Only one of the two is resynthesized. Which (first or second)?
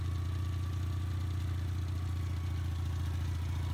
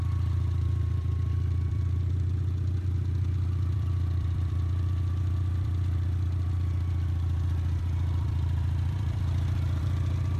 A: second